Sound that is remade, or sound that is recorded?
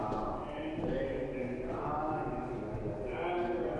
recorded